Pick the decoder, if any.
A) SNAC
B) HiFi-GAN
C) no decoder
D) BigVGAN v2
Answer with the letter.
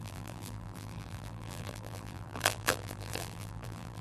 D